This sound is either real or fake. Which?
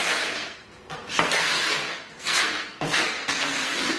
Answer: fake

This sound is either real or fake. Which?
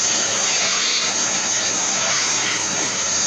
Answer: fake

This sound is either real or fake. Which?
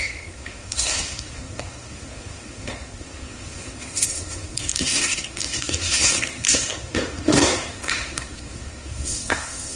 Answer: fake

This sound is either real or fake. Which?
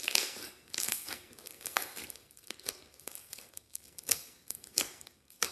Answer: fake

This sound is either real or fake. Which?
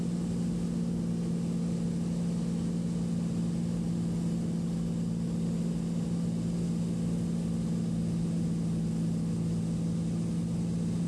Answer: real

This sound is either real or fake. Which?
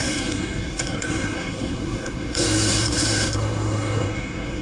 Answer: fake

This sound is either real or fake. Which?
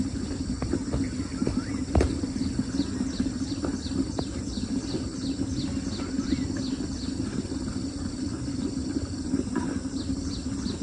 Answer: real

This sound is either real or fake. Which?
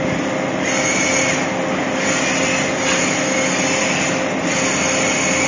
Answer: real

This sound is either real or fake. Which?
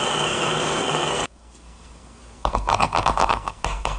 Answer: fake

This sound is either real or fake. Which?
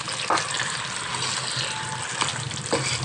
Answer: real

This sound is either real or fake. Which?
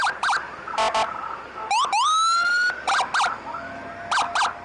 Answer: real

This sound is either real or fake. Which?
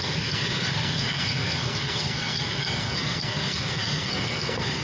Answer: fake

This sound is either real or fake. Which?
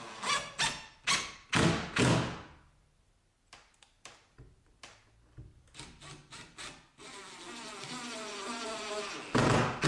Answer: real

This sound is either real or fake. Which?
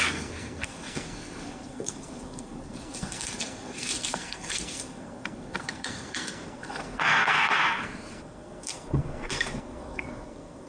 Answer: fake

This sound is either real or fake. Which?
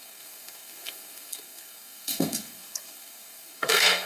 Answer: fake